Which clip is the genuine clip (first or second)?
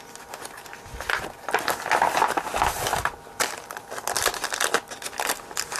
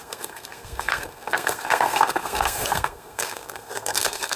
first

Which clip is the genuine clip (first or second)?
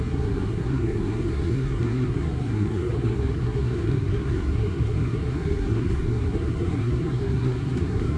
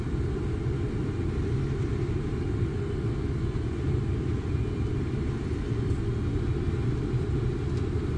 second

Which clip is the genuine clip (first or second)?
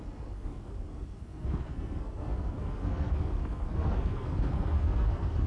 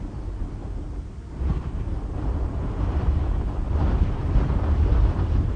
second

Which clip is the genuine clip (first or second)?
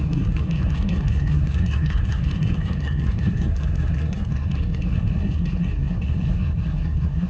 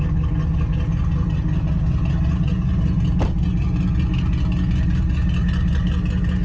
second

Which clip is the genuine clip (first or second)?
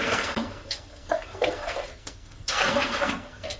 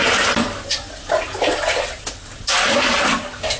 second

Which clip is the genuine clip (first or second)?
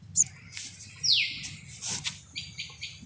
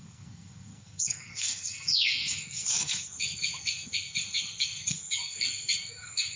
first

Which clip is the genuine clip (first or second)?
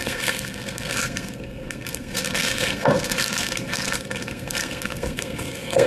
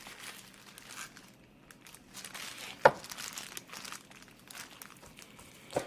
second